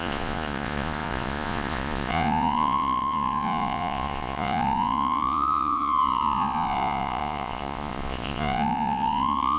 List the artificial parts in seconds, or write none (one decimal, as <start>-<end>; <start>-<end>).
0.0-9.6